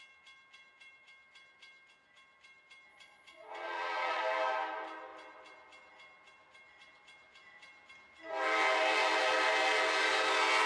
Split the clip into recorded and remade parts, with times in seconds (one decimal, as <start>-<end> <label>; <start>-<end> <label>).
0.0-2.9 recorded; 2.9-4.2 remade; 4.2-10.7 recorded